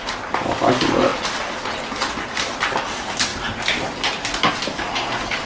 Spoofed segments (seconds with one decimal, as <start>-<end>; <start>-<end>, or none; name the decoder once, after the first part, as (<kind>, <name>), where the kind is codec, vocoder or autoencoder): none

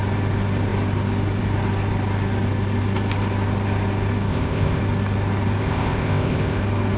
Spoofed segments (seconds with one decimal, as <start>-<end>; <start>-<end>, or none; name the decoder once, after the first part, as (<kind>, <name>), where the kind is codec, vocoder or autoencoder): 4.3-4.8 (codec, ZipCodec); 5.6-6.6

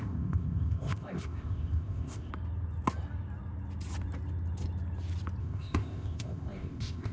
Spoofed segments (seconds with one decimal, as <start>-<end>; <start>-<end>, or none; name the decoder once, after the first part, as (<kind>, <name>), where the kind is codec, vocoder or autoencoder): 0.0-2.3 (codec, ZipCodec); 5.4-7.1

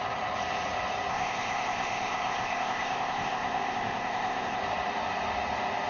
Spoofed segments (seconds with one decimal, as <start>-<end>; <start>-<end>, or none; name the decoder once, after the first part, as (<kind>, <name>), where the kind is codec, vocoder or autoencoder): 1.1-4.6 (codec, ZipCodec)

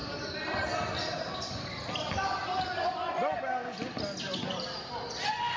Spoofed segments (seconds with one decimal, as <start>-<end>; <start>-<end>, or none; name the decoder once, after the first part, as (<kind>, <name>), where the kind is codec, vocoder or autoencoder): none

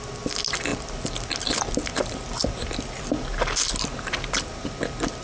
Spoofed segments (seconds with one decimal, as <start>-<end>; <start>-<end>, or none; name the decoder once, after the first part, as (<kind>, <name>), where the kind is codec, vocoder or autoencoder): none

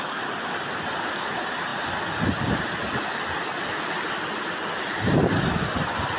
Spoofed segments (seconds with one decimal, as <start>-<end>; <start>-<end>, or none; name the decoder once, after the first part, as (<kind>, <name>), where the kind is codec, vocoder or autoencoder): none

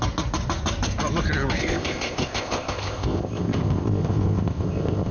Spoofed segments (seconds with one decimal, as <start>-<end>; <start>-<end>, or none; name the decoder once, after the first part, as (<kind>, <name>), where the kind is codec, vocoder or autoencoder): 1.6-5.1 (codec, ZipCodec)